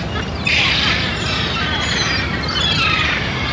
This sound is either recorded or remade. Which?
recorded